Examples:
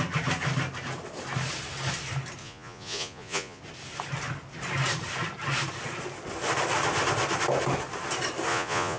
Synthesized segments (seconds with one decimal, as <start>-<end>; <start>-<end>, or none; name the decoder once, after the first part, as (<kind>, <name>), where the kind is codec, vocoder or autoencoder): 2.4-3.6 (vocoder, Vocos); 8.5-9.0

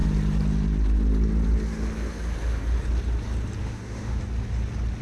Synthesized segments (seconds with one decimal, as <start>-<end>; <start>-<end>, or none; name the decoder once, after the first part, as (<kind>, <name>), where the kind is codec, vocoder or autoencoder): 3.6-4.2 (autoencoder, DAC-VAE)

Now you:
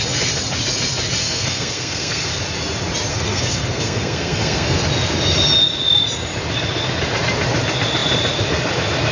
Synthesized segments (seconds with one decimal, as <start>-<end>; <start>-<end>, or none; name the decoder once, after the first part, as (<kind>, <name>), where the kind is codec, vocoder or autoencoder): 1.2-2.3 (codec, SNAC); 3.1-4.8